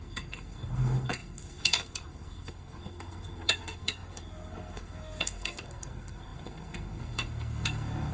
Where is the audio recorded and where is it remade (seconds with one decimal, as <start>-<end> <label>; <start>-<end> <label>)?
0.0-8.1 remade